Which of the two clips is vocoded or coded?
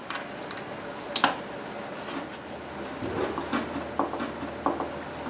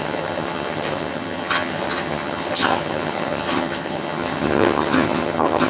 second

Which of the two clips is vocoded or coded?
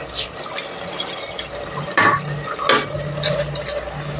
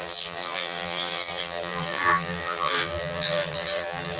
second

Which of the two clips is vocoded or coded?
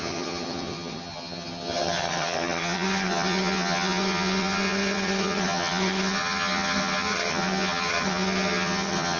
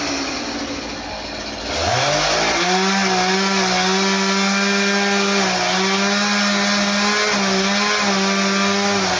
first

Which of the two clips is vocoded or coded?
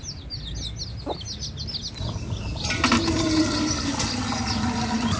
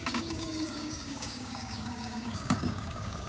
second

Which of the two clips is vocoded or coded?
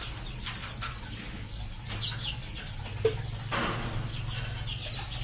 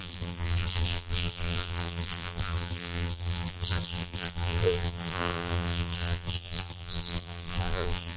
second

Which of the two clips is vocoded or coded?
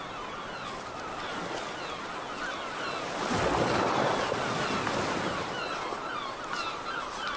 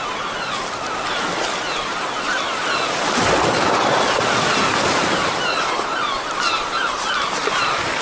second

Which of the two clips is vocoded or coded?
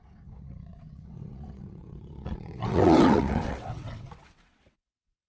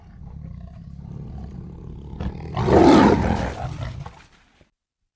first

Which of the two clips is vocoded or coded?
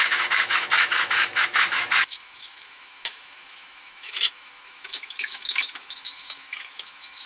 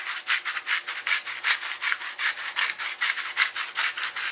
first